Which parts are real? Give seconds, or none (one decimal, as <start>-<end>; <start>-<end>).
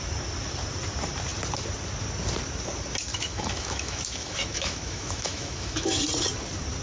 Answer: 0.0-3.1; 6.0-6.8